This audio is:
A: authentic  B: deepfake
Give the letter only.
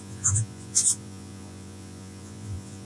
B